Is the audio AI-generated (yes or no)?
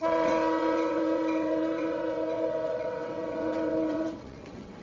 yes